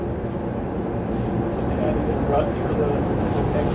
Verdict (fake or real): real